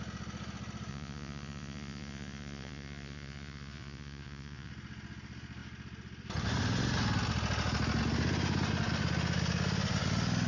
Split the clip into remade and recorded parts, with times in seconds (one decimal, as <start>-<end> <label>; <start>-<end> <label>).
0.0-0.9 recorded; 0.9-4.7 remade; 4.7-10.5 recorded